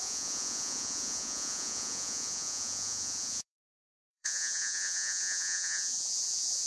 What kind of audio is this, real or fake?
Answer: fake